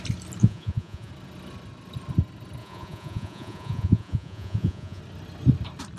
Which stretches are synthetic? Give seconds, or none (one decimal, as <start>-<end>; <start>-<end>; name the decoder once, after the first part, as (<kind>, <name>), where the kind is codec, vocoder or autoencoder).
0.4-1.1 (vocoder, Vocos); 2.6-5.0